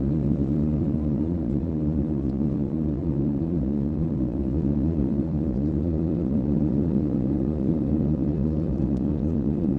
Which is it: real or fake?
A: fake